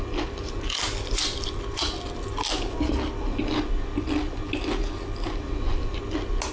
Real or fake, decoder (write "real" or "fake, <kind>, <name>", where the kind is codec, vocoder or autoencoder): real